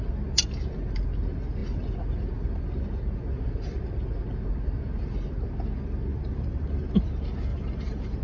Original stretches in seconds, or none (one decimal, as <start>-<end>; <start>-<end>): 0.0-6.1; 7.1-7.5